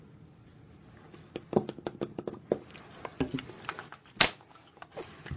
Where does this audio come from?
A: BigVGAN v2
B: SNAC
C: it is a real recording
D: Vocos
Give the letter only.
C